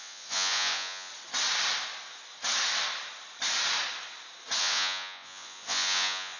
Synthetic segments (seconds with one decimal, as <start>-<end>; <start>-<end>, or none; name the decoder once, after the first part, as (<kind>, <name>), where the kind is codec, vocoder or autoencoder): 0.0-1.1 (vocoder, Vocos); 4.6-6.4